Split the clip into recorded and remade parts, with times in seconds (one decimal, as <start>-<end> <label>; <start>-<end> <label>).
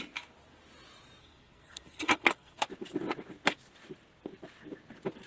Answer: 0.0-1.2 recorded; 1.2-2.6 remade; 2.6-5.3 recorded